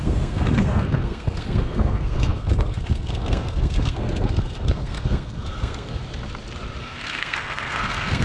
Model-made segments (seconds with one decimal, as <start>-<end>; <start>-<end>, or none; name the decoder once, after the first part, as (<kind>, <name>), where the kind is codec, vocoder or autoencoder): 0.0-6.0 (codec, SNAC); 6.8-8.2

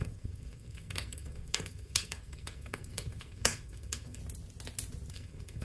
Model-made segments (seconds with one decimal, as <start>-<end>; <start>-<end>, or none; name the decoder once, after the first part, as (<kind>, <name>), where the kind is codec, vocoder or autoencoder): 0.0-4.2 (codec, SNAC); 5.1-5.6

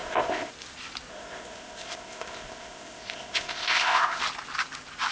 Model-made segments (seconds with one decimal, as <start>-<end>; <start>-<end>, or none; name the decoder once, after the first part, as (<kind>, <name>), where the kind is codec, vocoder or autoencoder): 0.0-0.5 (codec, ZipCodec); 1.1-4.2

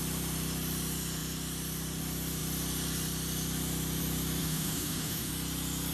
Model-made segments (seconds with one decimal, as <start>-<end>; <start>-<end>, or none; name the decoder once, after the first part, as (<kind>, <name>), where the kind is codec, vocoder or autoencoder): 4.4-5.3 (autoencoder, DAC-VAE)

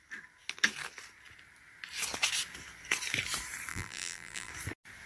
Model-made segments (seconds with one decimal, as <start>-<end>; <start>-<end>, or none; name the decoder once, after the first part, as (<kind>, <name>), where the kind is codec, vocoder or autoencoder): 3.7-4.5 (vocoder, BigVGAN v2)

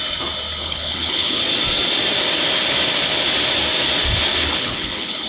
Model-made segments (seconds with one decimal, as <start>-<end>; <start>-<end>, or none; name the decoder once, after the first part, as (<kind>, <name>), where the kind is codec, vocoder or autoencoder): 0.6-1.4 (codec, HILCodec); 4.3-5.3

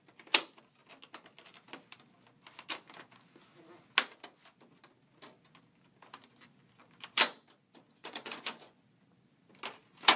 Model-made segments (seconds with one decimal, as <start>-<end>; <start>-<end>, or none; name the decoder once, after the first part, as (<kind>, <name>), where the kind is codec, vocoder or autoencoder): 8.0-8.8 (vocoder, Vocos)

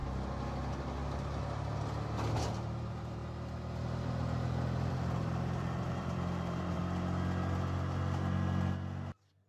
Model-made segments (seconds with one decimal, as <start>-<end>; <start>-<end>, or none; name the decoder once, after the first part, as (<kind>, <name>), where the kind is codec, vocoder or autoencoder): 2.3-3.2 (vocoder, BigVGAN v2); 4.9-6.8